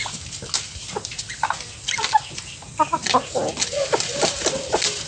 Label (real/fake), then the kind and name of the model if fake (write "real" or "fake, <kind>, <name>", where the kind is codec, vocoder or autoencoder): real